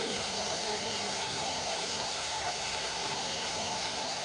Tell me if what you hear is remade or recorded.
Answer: remade